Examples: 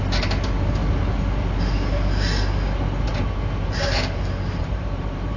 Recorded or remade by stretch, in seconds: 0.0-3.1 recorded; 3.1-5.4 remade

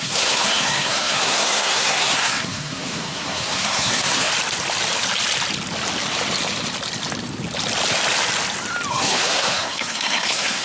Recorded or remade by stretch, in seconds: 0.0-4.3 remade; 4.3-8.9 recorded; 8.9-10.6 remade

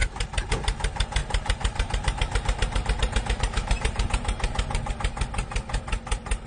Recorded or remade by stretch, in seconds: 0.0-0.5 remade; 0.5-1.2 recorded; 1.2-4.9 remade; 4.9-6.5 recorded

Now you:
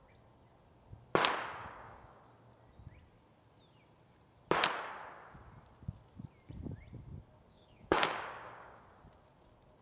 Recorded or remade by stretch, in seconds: 0.0-1.6 recorded; 1.6-2.2 remade; 2.2-7.5 recorded; 7.5-8.8 remade; 8.8-9.8 recorded

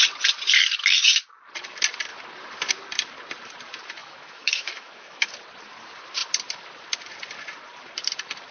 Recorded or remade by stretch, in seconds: 0.0-4.0 recorded; 4.0-5.3 remade; 5.3-8.5 recorded

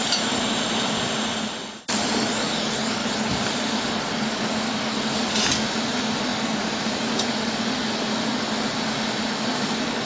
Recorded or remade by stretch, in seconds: 0.0-3.0 recorded; 3.0-3.6 remade; 3.6-6.3 recorded; 6.3-7.6 remade; 7.6-10.1 recorded

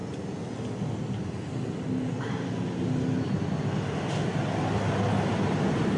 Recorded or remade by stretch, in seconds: 0.0-6.0 recorded

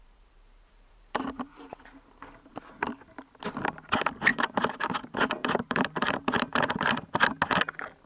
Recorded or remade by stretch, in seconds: 0.0-1.7 remade; 1.7-4.3 recorded; 4.3-7.1 remade; 7.1-8.1 recorded